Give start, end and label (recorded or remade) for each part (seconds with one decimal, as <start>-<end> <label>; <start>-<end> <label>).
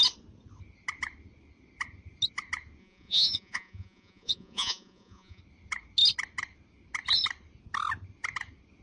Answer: 0.0-2.8 recorded; 2.8-5.4 remade; 5.4-8.8 recorded